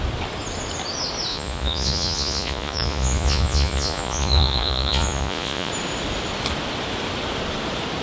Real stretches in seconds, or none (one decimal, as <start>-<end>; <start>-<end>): 0.0-1.3; 5.7-8.0